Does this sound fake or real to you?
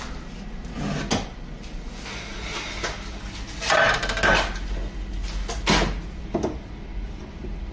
real